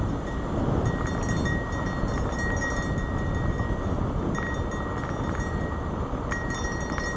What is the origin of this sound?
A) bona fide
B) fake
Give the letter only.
A